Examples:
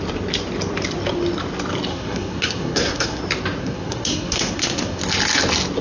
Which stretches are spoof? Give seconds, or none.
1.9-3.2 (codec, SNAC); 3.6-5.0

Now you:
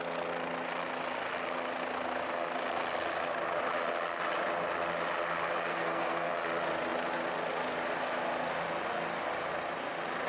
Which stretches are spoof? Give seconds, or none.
5.7-6.3 (codec, SNAC)

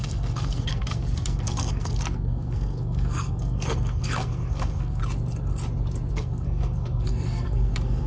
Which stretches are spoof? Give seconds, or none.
0.0-5.0 (codec, SNAC); 6.1-8.1

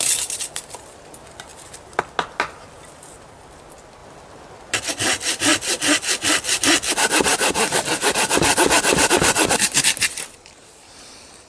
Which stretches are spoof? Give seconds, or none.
none

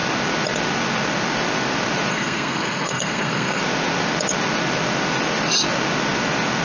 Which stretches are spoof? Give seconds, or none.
2.1-3.6 (codec, SNAC)

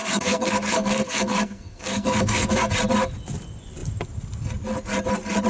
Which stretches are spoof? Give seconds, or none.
0.0-2.7 (codec, SNAC)

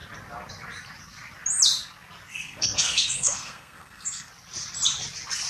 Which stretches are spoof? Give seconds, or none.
2.3-4.3 (codec, SNAC)

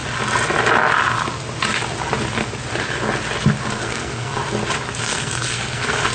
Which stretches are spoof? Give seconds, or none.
3.7-4.4 (codec, SNAC); 5.0-6.1